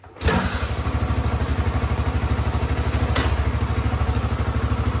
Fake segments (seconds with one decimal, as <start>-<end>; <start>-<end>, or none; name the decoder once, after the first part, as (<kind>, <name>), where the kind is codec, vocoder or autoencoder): none